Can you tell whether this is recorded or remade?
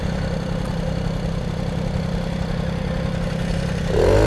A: recorded